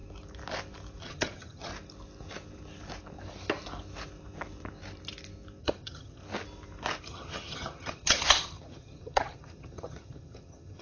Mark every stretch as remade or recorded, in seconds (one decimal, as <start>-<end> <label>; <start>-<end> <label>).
0.0-1.0 recorded; 1.0-1.7 remade; 1.7-5.6 recorded; 5.6-6.2 remade; 6.2-7.0 recorded; 7.0-10.8 remade